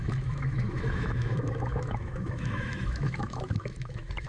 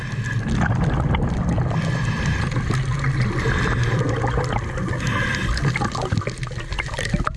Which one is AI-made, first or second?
first